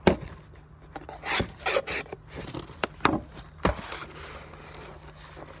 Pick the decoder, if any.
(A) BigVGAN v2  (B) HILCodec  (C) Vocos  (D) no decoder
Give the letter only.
D